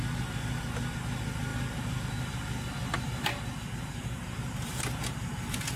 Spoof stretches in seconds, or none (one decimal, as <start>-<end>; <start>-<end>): 1.5-2.0; 3.3-4.6